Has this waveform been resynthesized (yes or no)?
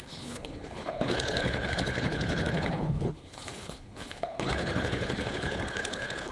yes